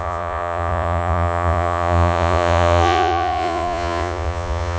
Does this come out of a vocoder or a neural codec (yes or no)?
yes